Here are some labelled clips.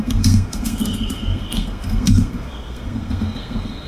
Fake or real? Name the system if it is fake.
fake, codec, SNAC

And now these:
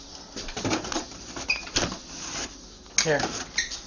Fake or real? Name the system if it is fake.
real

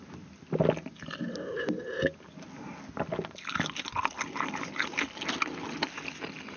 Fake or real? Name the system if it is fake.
real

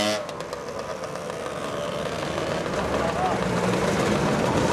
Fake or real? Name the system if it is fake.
real